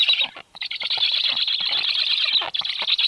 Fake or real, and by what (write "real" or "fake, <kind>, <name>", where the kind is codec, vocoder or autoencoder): real